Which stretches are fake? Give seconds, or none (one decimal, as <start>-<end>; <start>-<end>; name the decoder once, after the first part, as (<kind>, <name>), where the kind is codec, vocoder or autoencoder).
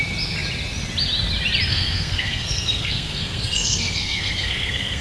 1.7-5.0 (codec, SNAC)